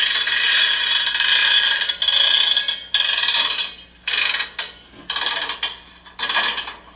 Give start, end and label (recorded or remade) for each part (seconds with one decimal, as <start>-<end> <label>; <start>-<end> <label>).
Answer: 0.0-1.4 recorded; 1.4-1.9 remade; 1.9-7.0 recorded